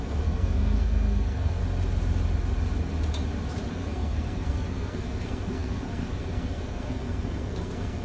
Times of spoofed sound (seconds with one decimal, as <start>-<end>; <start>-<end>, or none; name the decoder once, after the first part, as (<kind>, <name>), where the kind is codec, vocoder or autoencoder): 0.0-1.6 (codec, SNAC); 3.7-8.0